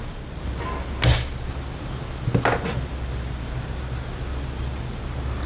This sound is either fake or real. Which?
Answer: real